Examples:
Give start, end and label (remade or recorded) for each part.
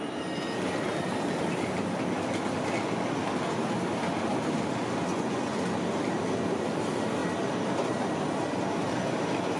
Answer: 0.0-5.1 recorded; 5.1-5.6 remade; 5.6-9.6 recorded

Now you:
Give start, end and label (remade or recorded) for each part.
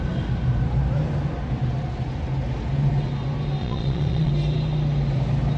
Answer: 0.0-3.6 recorded; 3.6-4.3 remade; 4.3-5.6 recorded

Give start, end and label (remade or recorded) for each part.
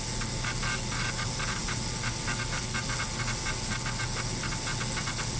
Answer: 0.0-5.4 recorded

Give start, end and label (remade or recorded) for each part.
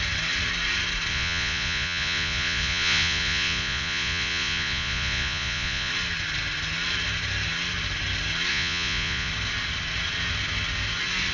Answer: 0.0-1.1 recorded; 1.1-5.9 remade; 5.9-8.5 recorded; 8.5-9.3 remade; 9.3-11.3 recorded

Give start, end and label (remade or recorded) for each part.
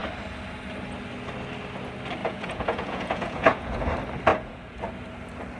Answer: 0.0-2.2 recorded; 2.2-3.9 remade; 3.9-4.3 recorded; 4.3-4.8 remade; 4.8-5.6 recorded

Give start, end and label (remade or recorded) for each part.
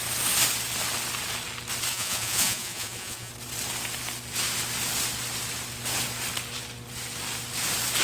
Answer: 0.0-1.9 recorded; 1.9-3.3 remade; 3.3-8.0 recorded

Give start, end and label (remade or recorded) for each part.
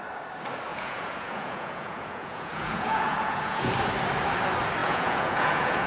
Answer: 0.0-0.7 recorded; 0.7-3.7 remade; 3.7-4.8 recorded; 4.8-5.9 remade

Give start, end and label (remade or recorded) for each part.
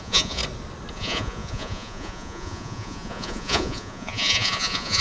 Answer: 0.0-0.4 remade; 0.4-0.9 recorded; 0.9-5.0 remade